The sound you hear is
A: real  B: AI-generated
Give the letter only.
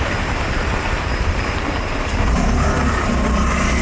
B